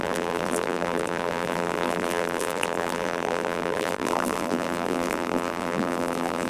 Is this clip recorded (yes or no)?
no